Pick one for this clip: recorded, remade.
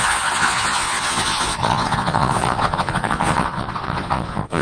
remade